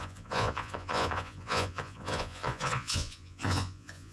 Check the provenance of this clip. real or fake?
fake